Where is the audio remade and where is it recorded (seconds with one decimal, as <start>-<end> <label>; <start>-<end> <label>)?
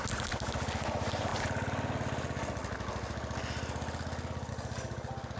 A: 0.0-5.4 recorded